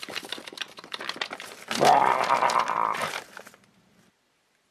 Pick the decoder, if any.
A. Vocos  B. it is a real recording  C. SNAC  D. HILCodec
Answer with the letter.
B